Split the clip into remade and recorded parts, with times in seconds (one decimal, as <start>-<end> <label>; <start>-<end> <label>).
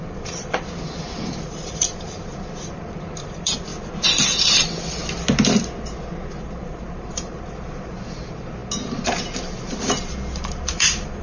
0.0-3.7 remade; 3.7-6.4 recorded; 6.4-11.2 remade